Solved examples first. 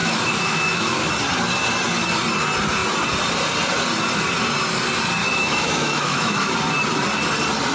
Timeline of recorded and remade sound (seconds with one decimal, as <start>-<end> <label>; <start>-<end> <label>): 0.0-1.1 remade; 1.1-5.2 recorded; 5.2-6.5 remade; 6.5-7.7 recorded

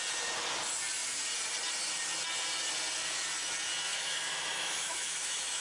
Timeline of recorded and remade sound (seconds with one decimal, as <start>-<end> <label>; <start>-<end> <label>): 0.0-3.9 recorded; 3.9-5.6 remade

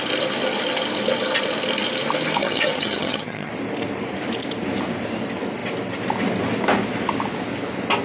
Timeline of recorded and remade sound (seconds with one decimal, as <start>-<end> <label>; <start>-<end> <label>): 0.0-2.4 recorded; 2.4-3.5 remade; 3.5-8.0 recorded